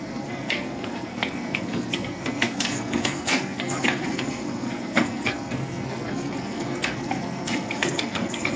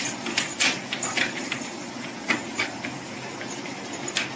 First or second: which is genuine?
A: second